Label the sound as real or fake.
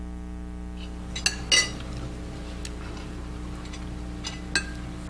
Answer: real